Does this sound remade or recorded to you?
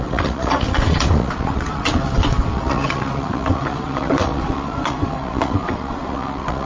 remade